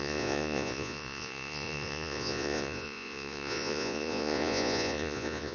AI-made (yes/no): yes